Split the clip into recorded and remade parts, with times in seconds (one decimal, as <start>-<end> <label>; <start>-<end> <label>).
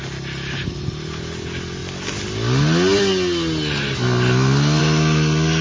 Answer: 0.0-5.6 recorded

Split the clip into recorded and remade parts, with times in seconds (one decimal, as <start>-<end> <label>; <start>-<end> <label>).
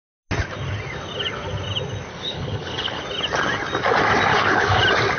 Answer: 0.0-2.1 recorded; 2.1-3.0 remade; 3.0-4.3 recorded; 4.3-4.8 remade; 4.8-5.2 recorded